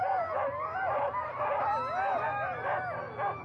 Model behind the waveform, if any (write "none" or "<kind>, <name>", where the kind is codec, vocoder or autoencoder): none